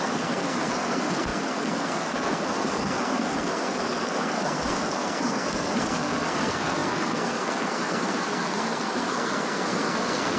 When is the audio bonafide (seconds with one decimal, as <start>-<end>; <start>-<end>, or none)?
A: none